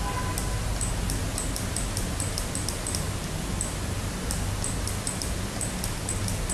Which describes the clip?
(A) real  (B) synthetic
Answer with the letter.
A